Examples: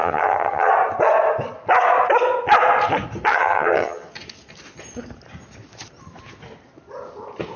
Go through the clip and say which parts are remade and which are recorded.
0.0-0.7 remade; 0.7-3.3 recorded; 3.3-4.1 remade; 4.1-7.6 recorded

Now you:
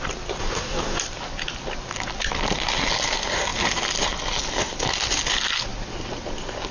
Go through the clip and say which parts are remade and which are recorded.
0.0-0.4 recorded; 0.4-1.0 remade; 1.0-6.7 recorded

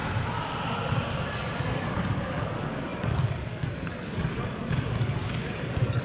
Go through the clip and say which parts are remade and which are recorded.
0.0-1.6 recorded; 1.6-6.0 remade

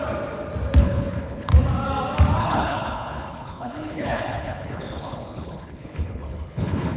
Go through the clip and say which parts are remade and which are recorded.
0.0-0.8 recorded; 0.8-1.5 remade; 1.5-2.4 recorded; 2.4-7.0 remade

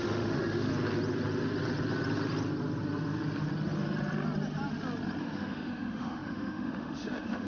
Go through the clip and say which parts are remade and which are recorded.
0.0-0.7 remade; 0.7-5.2 recorded; 5.2-7.5 remade

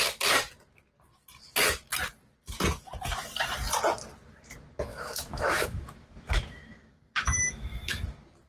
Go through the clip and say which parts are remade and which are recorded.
0.0-4.9 recorded; 4.9-8.1 remade; 8.1-8.5 recorded

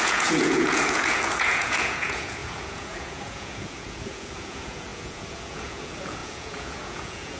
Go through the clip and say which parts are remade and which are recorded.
0.0-7.4 remade

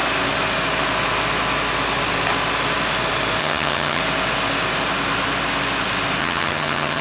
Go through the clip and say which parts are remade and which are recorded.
0.0-3.4 recorded; 3.4-4.0 remade; 4.0-6.2 recorded; 6.2-7.0 remade